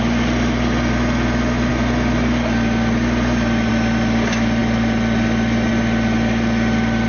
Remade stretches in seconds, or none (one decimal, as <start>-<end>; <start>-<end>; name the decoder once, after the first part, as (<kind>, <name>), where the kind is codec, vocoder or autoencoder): none